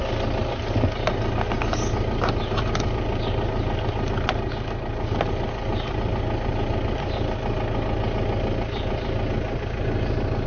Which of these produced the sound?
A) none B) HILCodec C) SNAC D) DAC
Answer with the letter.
A